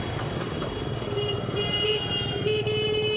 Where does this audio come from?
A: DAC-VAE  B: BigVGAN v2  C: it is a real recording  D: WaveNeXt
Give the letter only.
C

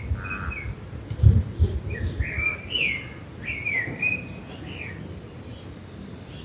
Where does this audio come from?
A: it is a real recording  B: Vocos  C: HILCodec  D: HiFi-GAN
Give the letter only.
A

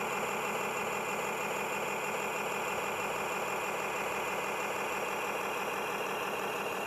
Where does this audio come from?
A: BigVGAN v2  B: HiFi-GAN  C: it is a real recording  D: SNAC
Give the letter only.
C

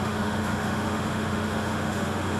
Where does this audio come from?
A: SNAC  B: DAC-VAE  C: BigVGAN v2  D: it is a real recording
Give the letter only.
B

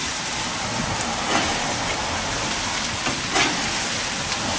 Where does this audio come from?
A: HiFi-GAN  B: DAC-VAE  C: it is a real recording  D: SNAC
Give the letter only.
C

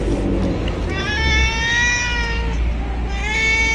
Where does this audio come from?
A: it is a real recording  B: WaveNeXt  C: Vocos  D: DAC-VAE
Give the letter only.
A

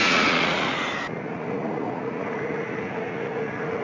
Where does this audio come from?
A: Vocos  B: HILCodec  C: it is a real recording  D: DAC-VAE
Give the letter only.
A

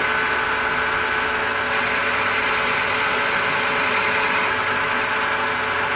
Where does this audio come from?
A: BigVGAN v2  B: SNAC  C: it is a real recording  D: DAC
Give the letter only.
C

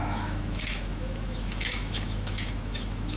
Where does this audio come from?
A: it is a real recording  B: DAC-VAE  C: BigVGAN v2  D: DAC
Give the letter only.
B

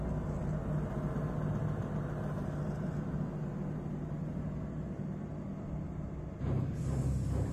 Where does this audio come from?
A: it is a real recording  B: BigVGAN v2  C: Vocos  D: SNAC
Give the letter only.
A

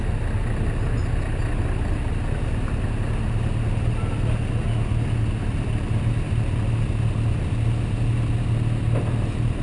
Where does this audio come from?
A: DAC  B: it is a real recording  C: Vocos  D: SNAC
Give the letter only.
B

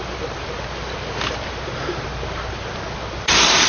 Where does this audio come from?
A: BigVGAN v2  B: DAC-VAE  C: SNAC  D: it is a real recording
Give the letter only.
D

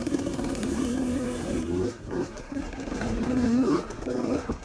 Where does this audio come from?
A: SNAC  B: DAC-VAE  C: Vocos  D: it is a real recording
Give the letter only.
A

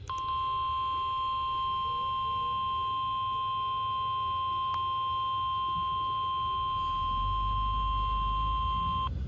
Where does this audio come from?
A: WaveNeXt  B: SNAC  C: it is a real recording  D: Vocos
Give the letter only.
C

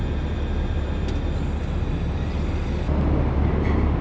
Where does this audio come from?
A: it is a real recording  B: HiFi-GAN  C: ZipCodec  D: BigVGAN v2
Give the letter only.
A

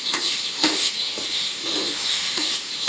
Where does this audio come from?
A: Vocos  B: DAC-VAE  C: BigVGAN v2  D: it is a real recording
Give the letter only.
B